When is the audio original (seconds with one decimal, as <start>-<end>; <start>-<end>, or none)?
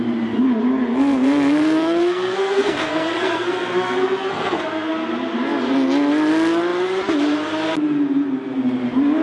0.0-0.9; 4.9-9.2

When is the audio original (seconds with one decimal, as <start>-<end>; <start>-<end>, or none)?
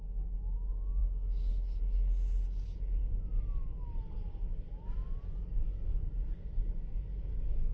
0.0-7.7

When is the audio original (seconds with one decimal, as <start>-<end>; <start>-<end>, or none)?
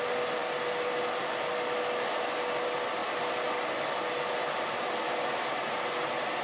0.0-6.4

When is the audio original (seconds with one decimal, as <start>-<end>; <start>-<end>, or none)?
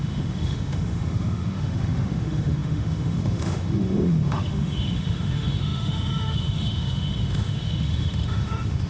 none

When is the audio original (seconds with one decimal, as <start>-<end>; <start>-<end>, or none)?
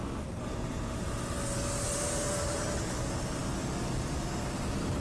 3.0-5.0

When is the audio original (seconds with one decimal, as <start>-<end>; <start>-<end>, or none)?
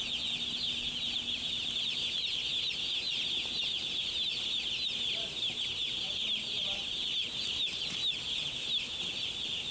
0.0-9.7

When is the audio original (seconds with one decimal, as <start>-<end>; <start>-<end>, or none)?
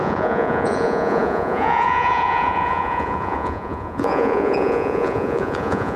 none